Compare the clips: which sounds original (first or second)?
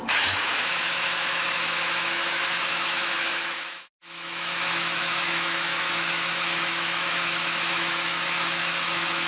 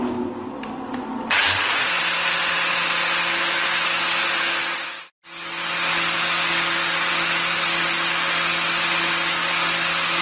second